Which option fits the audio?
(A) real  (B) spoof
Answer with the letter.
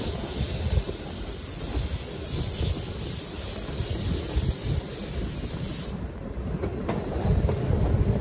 A